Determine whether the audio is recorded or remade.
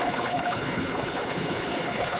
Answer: remade